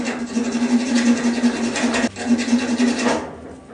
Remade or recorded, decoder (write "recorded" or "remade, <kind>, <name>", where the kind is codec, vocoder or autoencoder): recorded